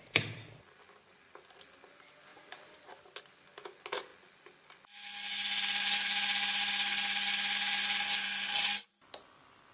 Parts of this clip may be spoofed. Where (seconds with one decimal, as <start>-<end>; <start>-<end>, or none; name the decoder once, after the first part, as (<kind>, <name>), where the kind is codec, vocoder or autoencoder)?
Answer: none